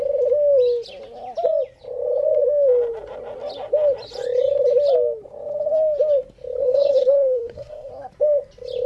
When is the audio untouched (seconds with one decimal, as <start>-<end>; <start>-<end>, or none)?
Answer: 0.0-6.6; 7.9-8.9